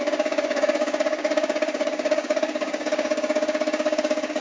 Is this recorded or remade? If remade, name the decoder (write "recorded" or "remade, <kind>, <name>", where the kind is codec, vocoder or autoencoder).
remade, codec, DAC